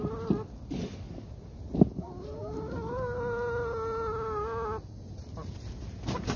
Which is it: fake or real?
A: real